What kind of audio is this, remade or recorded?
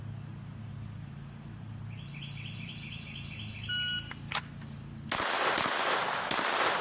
recorded